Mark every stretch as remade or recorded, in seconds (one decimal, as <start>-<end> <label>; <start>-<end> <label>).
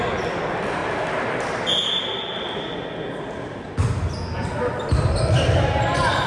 0.0-0.8 remade; 0.8-4.6 recorded; 4.6-6.3 remade